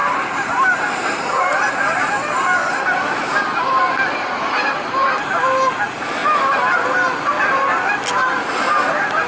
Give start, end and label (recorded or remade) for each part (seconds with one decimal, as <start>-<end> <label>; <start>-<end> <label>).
0.0-5.1 remade; 5.1-8.4 recorded; 8.4-8.9 remade; 8.9-9.3 recorded